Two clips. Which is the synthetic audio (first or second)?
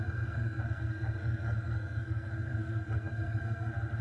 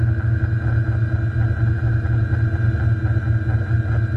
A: first